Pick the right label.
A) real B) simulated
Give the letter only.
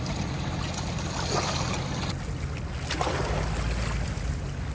A